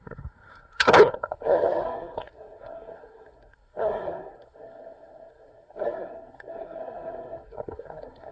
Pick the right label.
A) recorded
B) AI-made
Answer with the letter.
B